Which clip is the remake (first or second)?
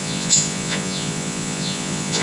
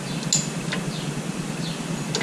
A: first